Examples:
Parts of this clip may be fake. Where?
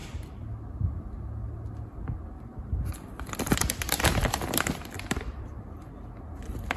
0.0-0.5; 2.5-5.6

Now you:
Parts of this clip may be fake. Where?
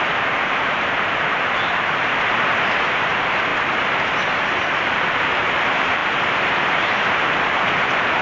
0.0-3.5; 5.1-8.2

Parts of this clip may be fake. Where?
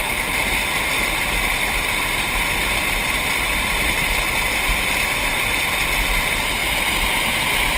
6.6-7.8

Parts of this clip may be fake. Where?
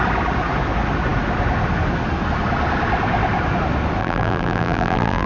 4.0-5.3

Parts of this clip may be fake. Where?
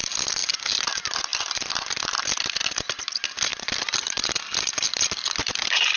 0.4-0.9; 1.3-2.1; 3.5-6.0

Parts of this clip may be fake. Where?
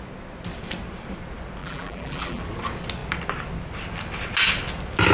1.6-2.4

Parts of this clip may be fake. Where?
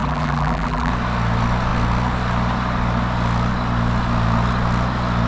0.0-0.9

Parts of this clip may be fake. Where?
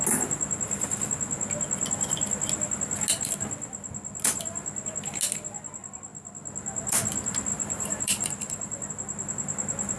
7.5-8.9